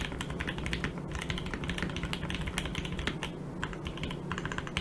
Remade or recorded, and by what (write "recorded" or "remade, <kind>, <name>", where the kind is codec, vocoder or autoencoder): recorded